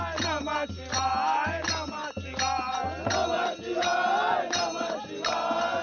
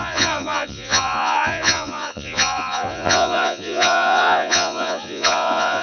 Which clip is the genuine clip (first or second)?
first